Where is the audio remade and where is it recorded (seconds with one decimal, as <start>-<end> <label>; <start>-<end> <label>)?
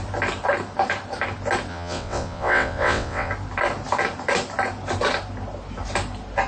0.0-1.7 recorded; 1.7-3.3 remade; 3.3-6.5 recorded